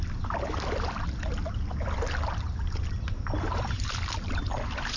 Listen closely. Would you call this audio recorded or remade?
recorded